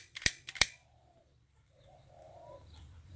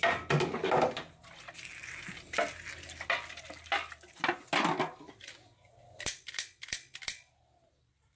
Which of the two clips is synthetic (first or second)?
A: first